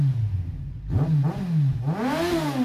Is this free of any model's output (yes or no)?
yes